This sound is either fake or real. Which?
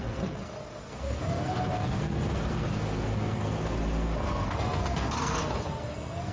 fake